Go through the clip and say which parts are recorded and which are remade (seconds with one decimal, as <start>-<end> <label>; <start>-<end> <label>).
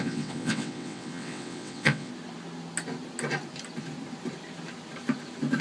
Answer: 0.0-2.1 remade; 2.1-5.6 recorded